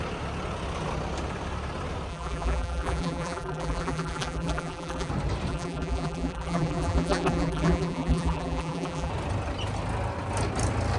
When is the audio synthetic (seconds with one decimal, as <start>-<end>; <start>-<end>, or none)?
2.1-5.1; 5.5-9.1